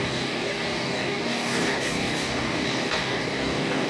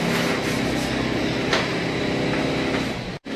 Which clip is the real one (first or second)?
second